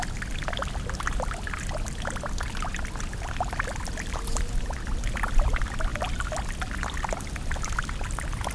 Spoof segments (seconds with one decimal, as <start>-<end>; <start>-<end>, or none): none